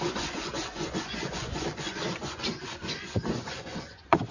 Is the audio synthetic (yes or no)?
yes